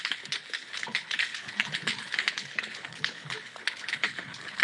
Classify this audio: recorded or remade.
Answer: remade